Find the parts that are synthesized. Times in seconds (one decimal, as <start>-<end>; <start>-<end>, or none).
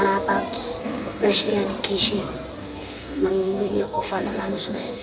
0.8-1.5; 2.6-5.0